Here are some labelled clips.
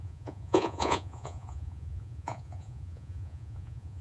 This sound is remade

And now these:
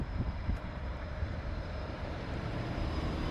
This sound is remade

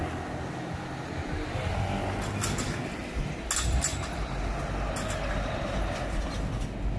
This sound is recorded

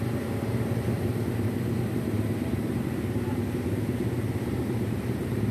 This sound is recorded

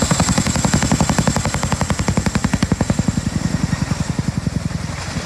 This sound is recorded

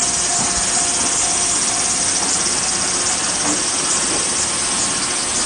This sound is recorded